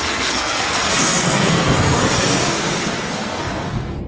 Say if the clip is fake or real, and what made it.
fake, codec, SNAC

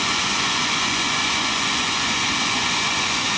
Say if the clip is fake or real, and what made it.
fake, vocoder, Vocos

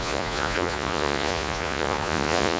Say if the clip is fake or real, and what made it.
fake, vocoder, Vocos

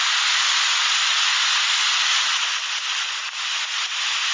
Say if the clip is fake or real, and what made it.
real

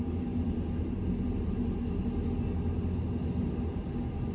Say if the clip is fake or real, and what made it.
real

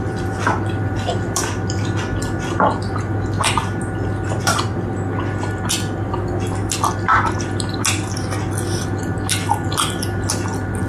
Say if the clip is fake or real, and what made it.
real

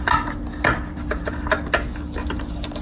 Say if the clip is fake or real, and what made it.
real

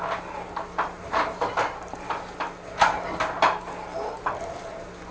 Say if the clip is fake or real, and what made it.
real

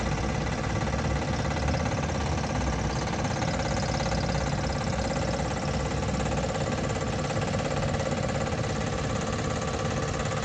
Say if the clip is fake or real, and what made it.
real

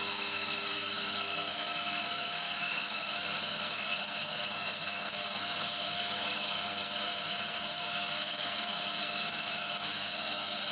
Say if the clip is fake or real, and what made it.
fake, codec, SNAC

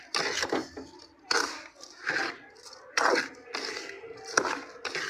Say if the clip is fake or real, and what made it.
real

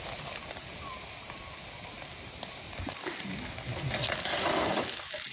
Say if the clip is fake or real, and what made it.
real